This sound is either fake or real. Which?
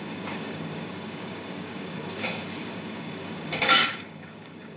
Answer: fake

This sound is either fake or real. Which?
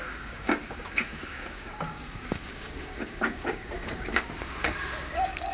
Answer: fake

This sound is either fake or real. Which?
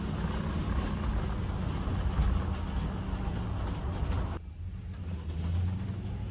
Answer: real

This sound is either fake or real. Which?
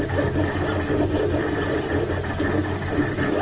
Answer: real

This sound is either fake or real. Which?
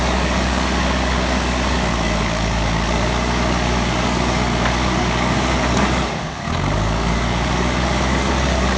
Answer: fake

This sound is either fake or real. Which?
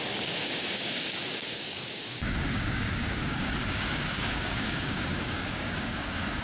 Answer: fake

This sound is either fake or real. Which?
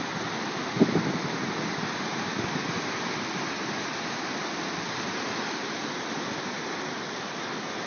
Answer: real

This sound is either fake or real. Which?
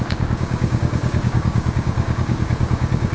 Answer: fake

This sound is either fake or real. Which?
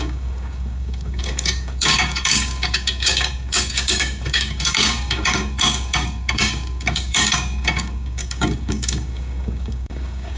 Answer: fake